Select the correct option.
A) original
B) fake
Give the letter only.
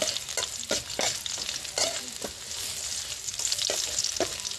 A